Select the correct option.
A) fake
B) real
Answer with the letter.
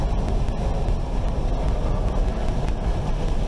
B